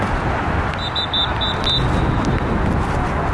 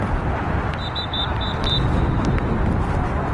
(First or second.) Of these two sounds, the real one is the first